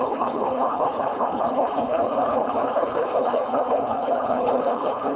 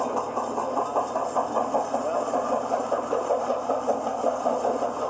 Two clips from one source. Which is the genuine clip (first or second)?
second